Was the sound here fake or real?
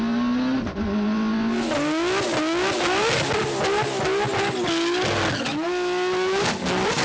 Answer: real